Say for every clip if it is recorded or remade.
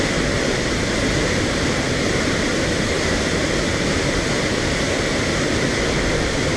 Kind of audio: recorded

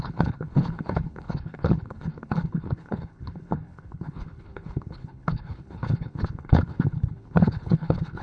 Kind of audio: remade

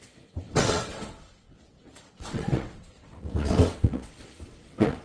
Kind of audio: remade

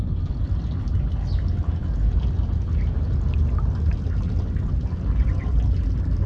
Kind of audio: recorded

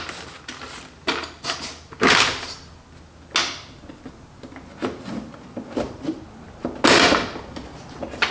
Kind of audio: recorded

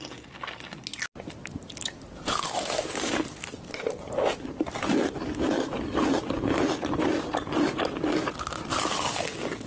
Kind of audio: recorded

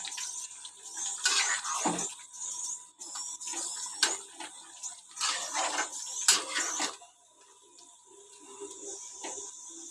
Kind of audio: recorded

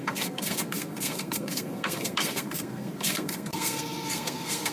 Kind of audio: remade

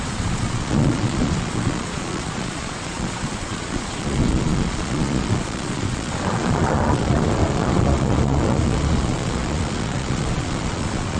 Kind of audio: remade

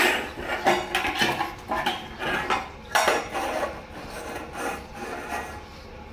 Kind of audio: recorded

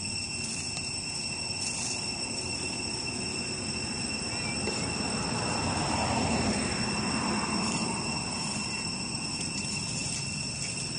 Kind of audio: recorded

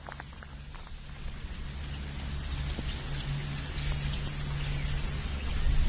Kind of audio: recorded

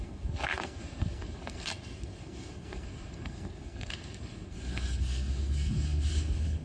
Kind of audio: remade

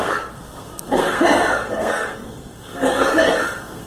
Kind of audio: remade